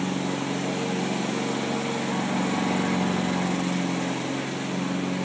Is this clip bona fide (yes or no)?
yes